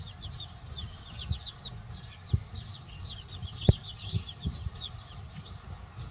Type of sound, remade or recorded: recorded